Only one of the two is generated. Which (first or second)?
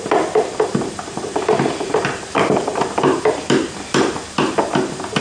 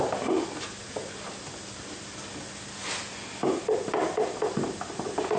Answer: first